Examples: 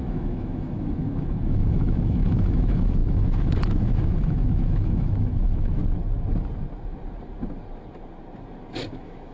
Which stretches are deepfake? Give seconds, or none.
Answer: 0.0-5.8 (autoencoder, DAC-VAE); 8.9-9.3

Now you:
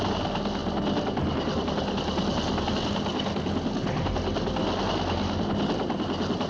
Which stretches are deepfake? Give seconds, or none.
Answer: none

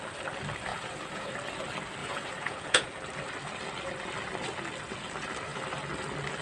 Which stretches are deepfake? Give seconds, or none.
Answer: 0.7-1.3 (vocoder, Vocos); 2.0-2.9